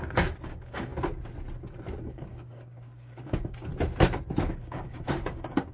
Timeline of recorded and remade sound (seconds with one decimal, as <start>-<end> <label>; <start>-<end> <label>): 0.0-0.9 remade; 0.9-2.0 recorded; 2.0-3.7 remade; 3.7-4.5 recorded; 4.5-5.7 remade